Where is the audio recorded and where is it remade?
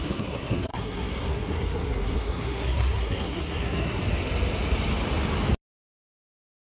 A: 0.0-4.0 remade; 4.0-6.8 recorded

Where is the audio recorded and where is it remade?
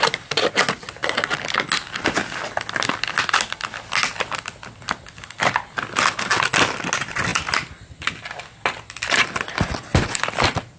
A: 0.0-10.8 recorded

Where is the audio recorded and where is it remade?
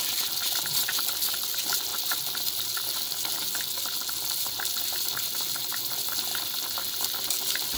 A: 0.0-7.8 recorded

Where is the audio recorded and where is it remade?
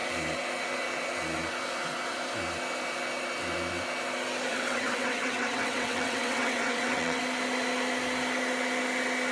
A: 0.0-4.5 recorded; 4.5-7.2 remade; 7.2-9.3 recorded